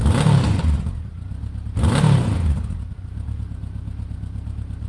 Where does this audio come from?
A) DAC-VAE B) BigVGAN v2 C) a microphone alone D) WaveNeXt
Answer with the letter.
C